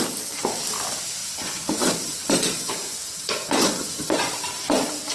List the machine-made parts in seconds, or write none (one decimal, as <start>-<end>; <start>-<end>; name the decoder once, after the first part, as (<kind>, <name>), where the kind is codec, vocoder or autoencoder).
1.2-4.3 (vocoder, Vocos)